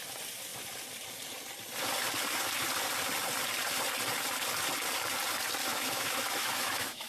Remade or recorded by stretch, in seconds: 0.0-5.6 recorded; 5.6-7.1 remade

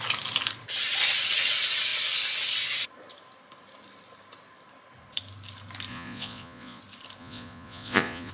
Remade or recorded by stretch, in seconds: 0.0-5.9 recorded; 5.9-6.8 remade; 6.8-7.2 recorded; 7.2-8.3 remade

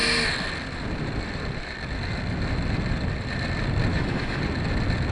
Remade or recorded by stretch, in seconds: 0.0-3.9 recorded; 3.9-4.4 remade; 4.4-5.1 recorded

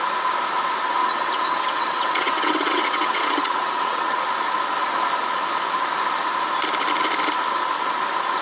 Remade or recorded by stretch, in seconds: 0.0-1.0 recorded; 1.0-4.2 remade; 4.2-8.4 recorded

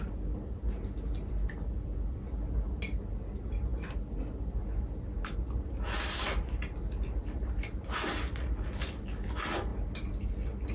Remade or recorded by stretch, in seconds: 0.0-10.7 recorded

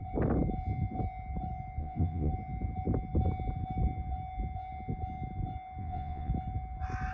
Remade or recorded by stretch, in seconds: 0.0-1.8 recorded; 1.8-2.3 remade; 2.3-5.8 recorded; 5.8-6.3 remade; 6.3-7.1 recorded

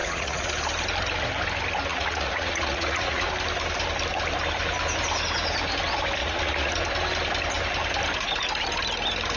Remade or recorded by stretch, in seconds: 0.0-0.5 remade; 0.5-1.9 recorded; 1.9-3.3 remade; 3.3-6.2 recorded; 6.2-6.7 remade; 6.7-9.4 recorded